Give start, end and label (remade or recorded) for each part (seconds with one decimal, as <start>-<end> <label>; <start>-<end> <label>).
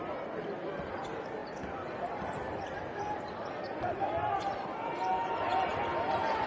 0.0-6.5 recorded